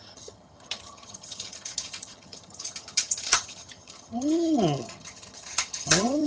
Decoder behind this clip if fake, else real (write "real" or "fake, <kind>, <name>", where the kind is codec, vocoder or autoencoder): fake, vocoder, HiFi-GAN